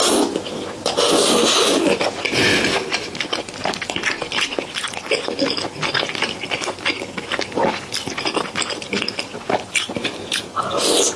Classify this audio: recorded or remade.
recorded